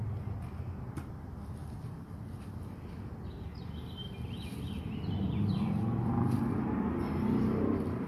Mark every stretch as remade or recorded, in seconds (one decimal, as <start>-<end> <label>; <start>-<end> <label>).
0.0-8.1 recorded